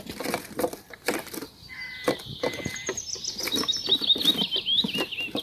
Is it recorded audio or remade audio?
recorded